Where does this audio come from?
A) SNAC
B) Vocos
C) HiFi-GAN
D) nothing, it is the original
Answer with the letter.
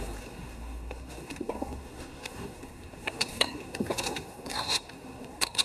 A